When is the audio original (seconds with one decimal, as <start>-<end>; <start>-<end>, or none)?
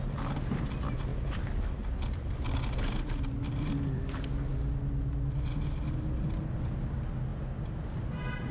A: 0.0-8.5